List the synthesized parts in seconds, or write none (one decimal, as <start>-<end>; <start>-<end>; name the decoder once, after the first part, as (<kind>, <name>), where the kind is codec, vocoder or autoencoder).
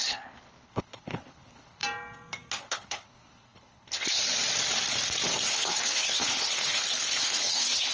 0.0-1.8 (codec, HILCodec); 2.6-4.2; 5.5-7.9